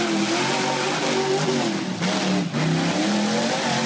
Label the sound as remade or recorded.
recorded